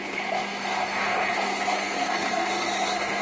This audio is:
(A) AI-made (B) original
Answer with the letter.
A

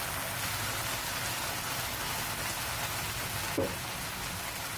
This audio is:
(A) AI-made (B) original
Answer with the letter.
B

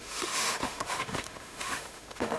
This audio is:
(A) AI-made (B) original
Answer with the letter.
A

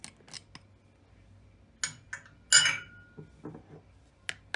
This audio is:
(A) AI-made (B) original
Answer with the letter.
B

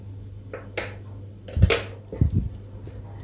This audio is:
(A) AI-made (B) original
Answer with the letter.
B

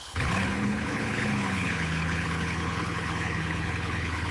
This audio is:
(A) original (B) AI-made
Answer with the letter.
B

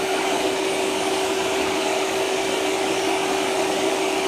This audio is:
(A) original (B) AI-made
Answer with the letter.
B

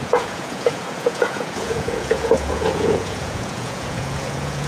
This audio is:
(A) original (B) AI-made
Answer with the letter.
B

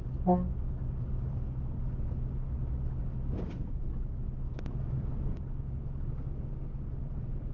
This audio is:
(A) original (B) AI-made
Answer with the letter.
A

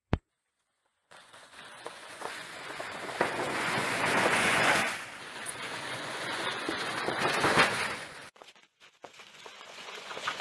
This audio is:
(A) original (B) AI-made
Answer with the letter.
B